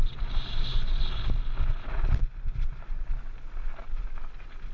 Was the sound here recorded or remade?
recorded